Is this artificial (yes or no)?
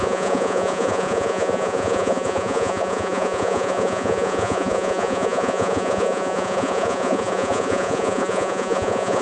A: yes